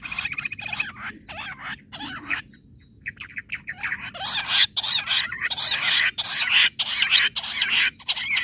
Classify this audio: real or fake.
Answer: real